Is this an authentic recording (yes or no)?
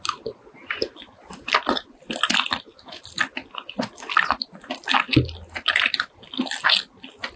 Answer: yes